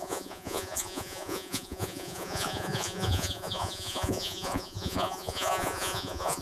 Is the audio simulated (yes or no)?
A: yes